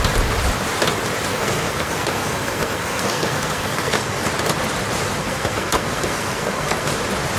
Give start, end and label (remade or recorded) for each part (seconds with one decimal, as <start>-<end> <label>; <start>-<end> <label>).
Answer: 0.0-1.3 recorded; 1.3-4.3 remade; 4.3-5.2 recorded; 5.2-6.9 remade; 6.9-7.4 recorded